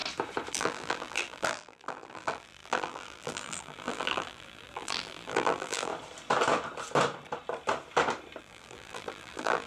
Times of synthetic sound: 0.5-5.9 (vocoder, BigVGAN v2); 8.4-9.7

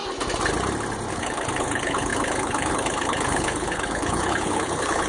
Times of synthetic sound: 1.1-5.1 (codec, HILCodec)

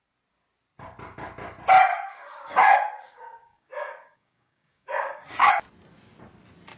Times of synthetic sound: 1.9-5.5 (codec, DAC)

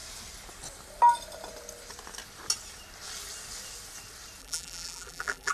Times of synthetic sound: 4.4-5.5 (vocoder, BigVGAN v2)